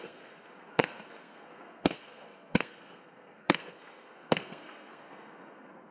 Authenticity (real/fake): fake